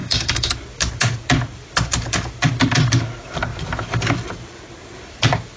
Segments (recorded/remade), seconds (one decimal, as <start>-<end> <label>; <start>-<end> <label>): 0.0-0.5 remade; 0.5-5.6 recorded